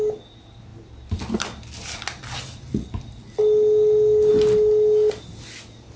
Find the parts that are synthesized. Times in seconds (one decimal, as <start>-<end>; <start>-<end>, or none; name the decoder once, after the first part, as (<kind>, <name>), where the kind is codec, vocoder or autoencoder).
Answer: none